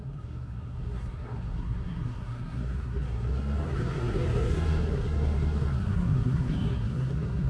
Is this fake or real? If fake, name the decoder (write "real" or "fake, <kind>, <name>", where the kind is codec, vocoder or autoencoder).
fake, codec, SNAC